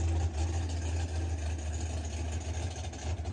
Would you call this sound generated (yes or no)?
no